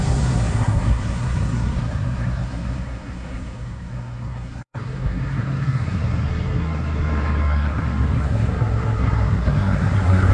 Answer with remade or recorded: remade